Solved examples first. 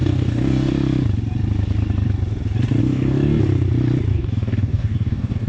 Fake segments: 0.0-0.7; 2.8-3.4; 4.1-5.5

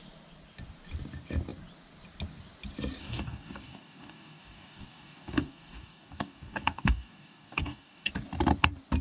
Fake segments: 3.0-8.1

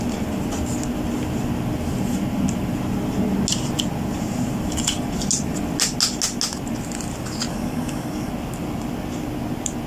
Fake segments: 7.5-8.3

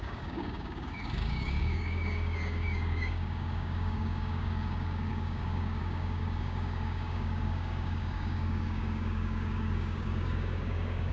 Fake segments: 0.0-11.1

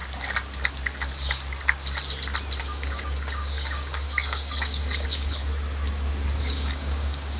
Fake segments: 2.6-5.4; 6.4-7.4